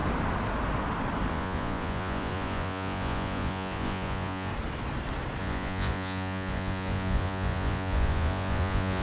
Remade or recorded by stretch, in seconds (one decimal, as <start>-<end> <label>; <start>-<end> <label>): 0.0-1.3 recorded; 1.3-4.5 remade; 4.5-5.4 recorded; 5.4-9.0 remade